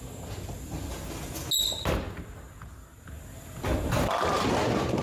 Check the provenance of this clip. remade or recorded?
recorded